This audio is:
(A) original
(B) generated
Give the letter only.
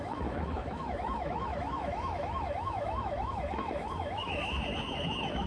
B